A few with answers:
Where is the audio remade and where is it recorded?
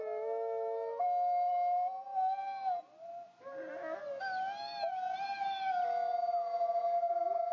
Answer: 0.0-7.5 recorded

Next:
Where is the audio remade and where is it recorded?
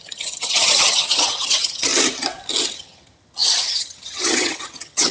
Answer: 0.0-1.9 remade; 1.9-2.7 recorded; 2.7-5.1 remade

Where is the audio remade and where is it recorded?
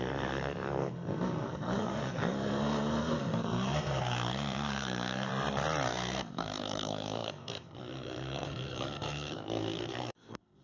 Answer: 0.0-5.3 remade; 5.3-5.9 recorded; 5.9-10.6 remade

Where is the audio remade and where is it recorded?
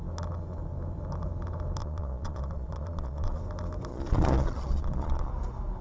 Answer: 0.0-1.8 recorded; 1.8-3.4 remade; 3.4-3.9 recorded; 3.9-5.3 remade; 5.3-5.8 recorded